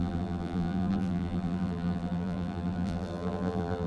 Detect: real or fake fake